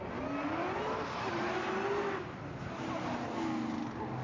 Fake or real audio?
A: real